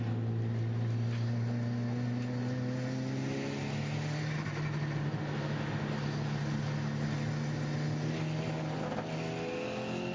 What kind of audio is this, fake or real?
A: real